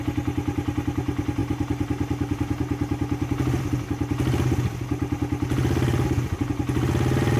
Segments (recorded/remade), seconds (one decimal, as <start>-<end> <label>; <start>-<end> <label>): 0.0-7.4 recorded